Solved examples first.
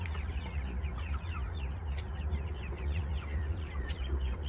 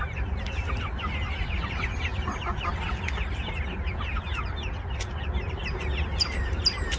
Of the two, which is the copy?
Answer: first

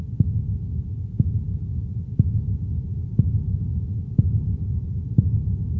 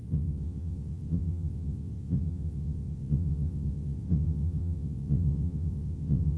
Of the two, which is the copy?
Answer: second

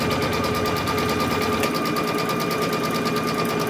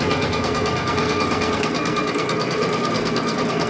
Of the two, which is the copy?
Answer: second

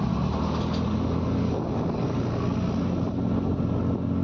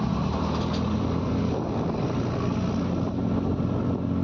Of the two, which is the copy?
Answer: second